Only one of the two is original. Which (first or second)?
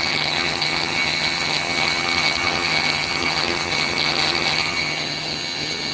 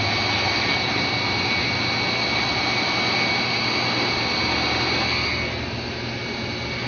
second